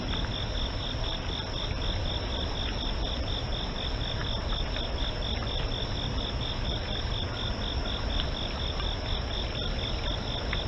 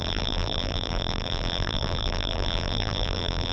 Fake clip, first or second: second